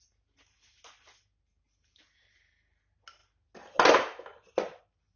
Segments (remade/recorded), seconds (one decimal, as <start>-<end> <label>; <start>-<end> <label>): 0.0-5.2 recorded